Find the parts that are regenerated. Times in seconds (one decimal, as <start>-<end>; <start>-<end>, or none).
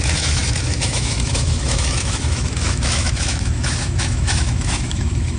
0.0-5.4